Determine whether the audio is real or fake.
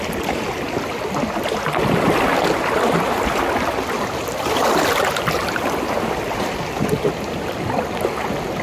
real